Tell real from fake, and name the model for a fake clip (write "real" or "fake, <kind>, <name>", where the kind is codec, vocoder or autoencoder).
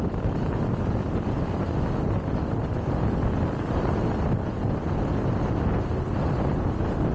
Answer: real